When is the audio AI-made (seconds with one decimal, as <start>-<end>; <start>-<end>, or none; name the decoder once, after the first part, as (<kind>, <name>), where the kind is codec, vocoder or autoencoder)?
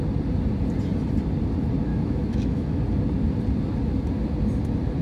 1.9-2.8 (autoencoder, DAC-VAE)